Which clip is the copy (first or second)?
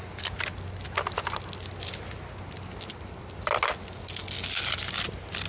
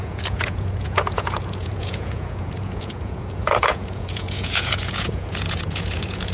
second